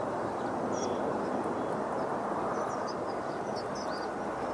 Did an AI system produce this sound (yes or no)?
no